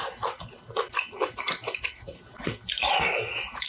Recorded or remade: recorded